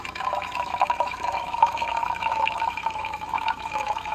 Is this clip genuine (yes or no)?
no